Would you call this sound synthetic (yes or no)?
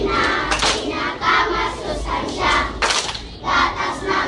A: no